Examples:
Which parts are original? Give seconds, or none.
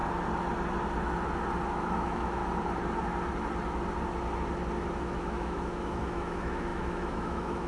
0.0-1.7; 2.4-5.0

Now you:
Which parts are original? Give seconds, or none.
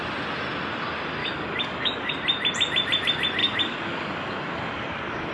0.0-1.2; 2.1-3.4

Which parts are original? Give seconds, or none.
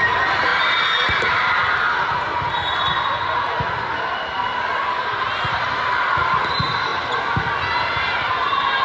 0.0-5.0; 5.9-6.9; 7.4-8.8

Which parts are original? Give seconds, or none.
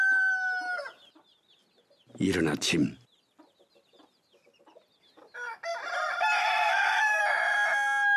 0.0-6.4; 7.2-8.2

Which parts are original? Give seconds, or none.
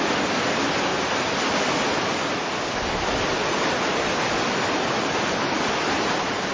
0.0-6.5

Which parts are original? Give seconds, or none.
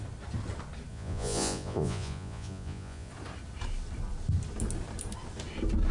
0.0-0.9; 3.1-5.9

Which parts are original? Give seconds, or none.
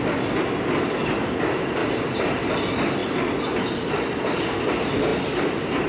0.0-5.9